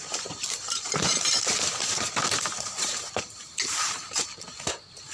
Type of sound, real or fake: fake